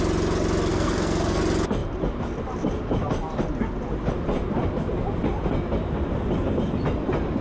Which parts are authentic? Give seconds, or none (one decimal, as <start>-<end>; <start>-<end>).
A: 0.0-0.7; 1.4-7.4